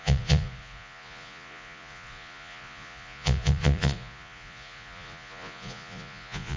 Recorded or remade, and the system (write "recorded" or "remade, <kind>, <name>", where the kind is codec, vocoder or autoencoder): remade, vocoder, Vocos